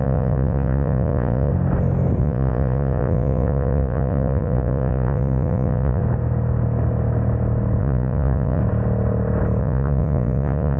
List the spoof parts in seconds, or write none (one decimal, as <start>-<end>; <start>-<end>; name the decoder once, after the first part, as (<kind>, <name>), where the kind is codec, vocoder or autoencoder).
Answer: 0.0-1.5 (vocoder, Vocos); 2.2-6.0; 7.8-8.6; 9.6-10.8